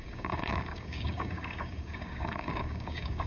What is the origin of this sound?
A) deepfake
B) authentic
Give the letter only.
A